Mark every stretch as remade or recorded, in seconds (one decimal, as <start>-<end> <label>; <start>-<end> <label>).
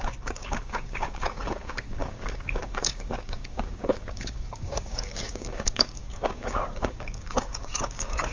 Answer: 0.0-8.3 remade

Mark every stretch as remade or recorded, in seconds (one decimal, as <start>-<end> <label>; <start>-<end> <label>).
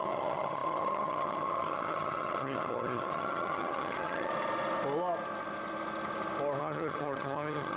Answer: 0.0-4.3 remade; 4.3-6.6 recorded; 6.6-7.8 remade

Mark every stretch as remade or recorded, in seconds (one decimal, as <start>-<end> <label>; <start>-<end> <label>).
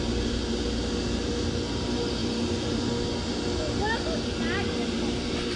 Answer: 0.0-5.6 recorded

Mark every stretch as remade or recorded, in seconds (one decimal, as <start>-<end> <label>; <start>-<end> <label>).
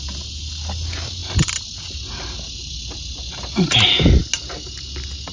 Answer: 0.0-5.3 recorded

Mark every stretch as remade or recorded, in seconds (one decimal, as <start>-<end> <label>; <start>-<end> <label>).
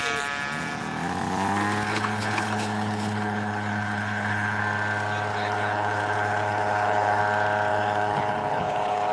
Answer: 0.0-1.9 recorded; 1.9-4.6 remade; 4.6-5.3 recorded; 5.3-7.2 remade; 7.2-7.7 recorded; 7.7-9.1 remade